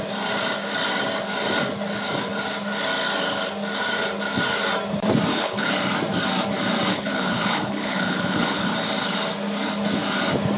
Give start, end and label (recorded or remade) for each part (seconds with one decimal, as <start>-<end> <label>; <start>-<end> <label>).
0.0-5.3 recorded; 5.3-5.8 remade; 5.8-6.9 recorded; 6.9-8.7 remade; 8.7-10.6 recorded